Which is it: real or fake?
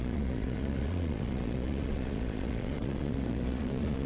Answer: fake